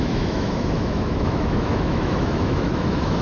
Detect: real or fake fake